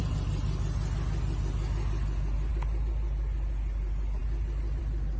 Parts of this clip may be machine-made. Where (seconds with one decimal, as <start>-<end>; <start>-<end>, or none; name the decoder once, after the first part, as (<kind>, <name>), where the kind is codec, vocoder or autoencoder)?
none